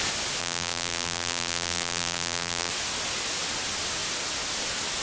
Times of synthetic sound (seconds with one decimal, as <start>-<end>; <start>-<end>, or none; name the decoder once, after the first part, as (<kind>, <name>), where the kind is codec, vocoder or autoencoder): 0.4-2.7 (vocoder, BigVGAN v2)